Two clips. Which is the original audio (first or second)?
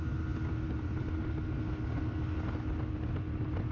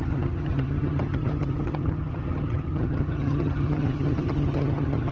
first